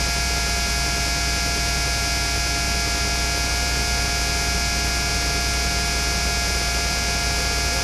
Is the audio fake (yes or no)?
no